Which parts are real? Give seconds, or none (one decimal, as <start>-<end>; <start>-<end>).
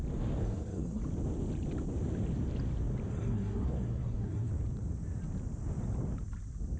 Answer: 0.0-0.4; 1.0-3.1; 4.5-6.8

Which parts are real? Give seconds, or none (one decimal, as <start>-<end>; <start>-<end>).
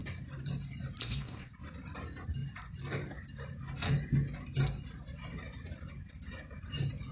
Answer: 0.0-1.0; 1.5-7.1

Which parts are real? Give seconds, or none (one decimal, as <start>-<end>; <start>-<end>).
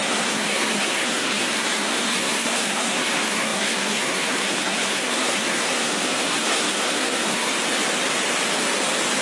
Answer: 7.5-9.2